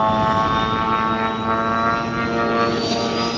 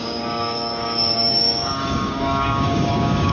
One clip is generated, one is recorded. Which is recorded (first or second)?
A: first